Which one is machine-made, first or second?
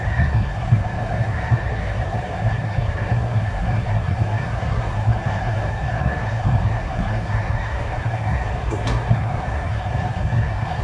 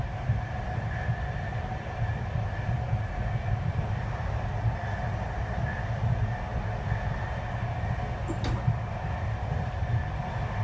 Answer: first